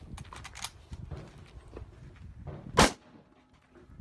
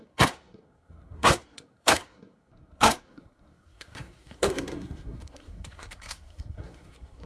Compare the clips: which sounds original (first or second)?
first